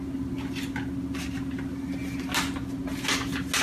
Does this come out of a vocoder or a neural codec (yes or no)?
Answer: no